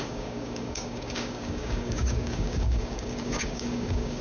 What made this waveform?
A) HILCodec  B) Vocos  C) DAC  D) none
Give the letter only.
C